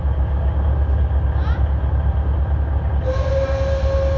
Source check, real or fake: real